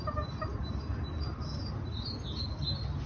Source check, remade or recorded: recorded